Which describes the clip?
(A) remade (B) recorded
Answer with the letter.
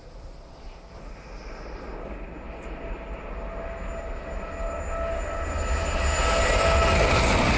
B